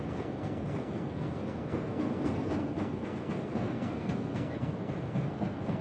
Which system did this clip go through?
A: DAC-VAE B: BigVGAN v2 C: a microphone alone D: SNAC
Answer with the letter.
D